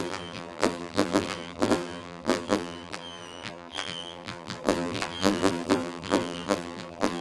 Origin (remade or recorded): remade